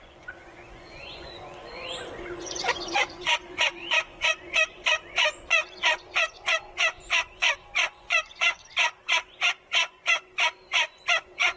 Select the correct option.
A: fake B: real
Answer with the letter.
A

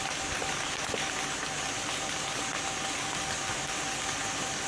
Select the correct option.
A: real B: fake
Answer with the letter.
A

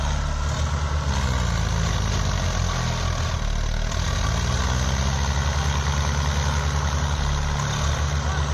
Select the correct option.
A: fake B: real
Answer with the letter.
B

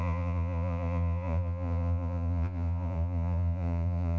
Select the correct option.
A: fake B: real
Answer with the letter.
A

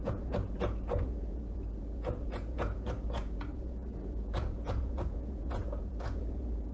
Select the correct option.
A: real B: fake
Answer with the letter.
B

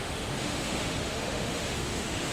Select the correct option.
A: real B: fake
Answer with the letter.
B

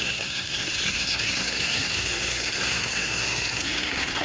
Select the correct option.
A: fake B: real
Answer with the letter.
A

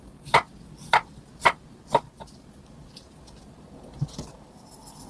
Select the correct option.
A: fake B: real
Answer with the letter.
B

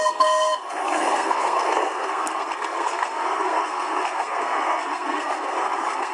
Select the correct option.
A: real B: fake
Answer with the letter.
B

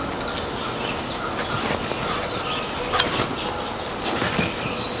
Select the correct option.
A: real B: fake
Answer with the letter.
A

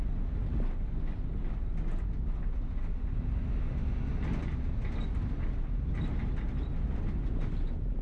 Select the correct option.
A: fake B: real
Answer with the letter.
B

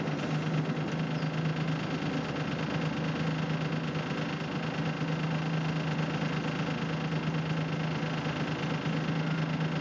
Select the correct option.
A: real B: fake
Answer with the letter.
A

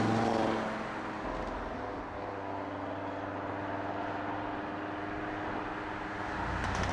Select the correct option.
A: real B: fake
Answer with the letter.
A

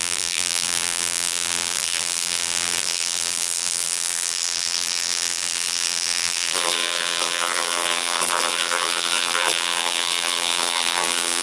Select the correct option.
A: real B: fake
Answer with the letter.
B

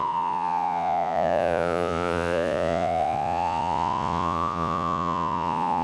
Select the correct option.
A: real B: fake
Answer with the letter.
B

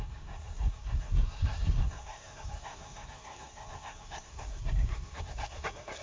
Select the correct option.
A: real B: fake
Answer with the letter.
B